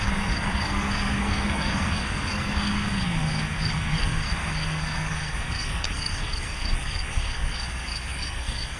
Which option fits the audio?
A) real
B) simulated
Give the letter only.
B